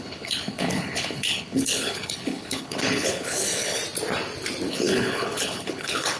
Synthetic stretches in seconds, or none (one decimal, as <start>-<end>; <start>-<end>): 0.0-3.8; 4.7-6.2